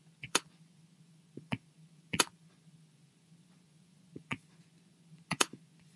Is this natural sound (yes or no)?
no